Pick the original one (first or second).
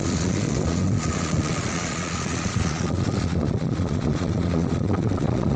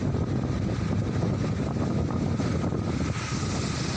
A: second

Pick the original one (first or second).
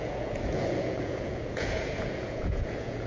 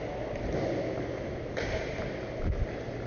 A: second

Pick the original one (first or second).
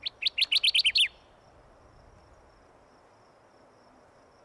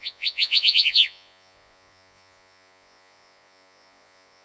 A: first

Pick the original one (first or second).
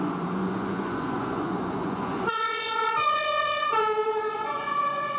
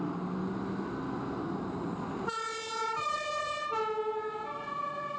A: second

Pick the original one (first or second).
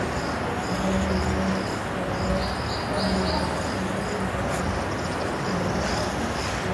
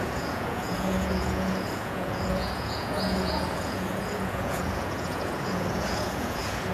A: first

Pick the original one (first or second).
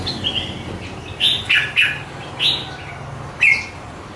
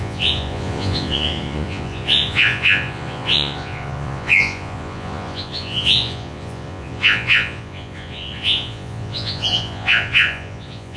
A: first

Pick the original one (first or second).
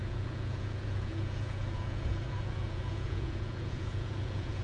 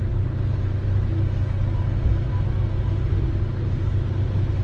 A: second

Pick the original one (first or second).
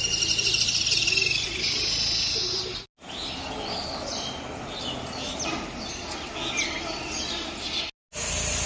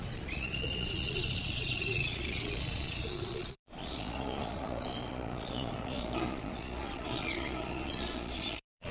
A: first